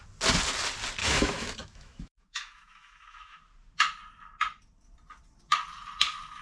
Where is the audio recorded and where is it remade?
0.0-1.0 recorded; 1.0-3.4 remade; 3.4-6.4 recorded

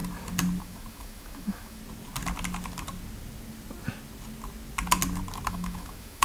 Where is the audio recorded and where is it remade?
0.0-0.6 recorded; 0.6-1.8 remade; 1.8-5.5 recorded; 5.5-6.2 remade

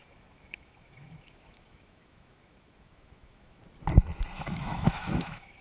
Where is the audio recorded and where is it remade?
0.0-3.6 remade; 3.6-4.4 recorded; 4.4-5.6 remade

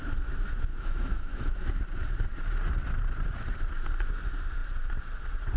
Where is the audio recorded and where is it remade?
0.0-0.7 recorded; 0.7-1.7 remade; 1.7-5.6 recorded

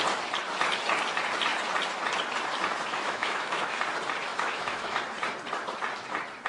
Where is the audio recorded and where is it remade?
0.0-2.9 recorded; 2.9-3.8 remade; 3.8-4.3 recorded; 4.3-5.0 remade; 5.0-6.5 recorded

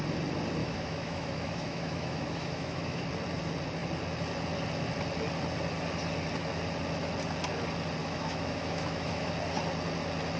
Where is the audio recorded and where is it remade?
0.0-0.6 recorded; 0.6-3.0 remade; 3.0-8.0 recorded; 8.0-9.3 remade; 9.3-10.4 recorded

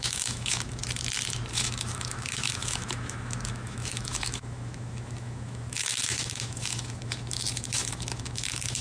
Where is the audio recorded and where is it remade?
0.0-0.8 remade; 0.8-1.5 recorded; 1.5-8.8 remade

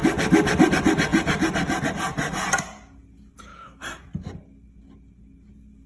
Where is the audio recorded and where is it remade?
0.0-3.5 recorded; 3.5-4.0 remade; 4.0-5.9 recorded